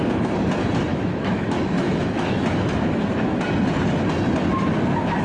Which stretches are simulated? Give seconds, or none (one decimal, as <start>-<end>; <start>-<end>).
0.9-3.4